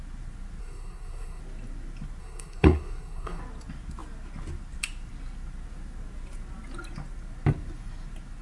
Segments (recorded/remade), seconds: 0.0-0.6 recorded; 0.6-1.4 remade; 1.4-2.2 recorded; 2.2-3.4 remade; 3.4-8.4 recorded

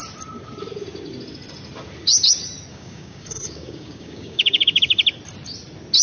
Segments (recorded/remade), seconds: 0.0-2.7 recorded; 2.7-4.8 remade; 4.8-6.0 recorded

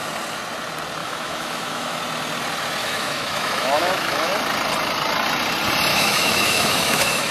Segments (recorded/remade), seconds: 0.0-1.0 recorded; 1.0-2.0 remade; 2.0-2.8 recorded; 2.8-4.3 remade; 4.3-5.9 recorded; 5.9-7.3 remade